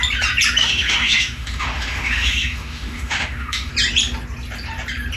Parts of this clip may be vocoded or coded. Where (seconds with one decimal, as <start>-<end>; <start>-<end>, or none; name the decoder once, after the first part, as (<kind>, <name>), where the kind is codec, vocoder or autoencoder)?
0.6-3.7 (autoencoder, DAC-VAE)